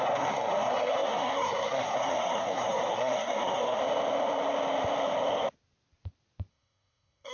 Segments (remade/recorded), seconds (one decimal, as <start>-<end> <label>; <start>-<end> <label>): 0.0-3.8 remade; 3.8-6.5 recorded; 6.5-7.3 remade